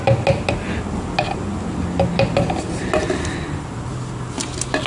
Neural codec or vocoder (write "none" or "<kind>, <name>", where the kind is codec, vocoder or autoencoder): none